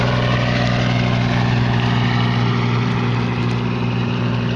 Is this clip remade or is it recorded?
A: recorded